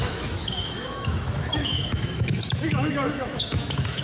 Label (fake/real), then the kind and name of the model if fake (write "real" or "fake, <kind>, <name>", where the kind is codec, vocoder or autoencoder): fake, autoencoder, DAC-VAE